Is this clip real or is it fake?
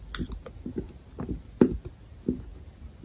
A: real